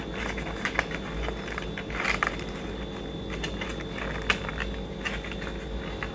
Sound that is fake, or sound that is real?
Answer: real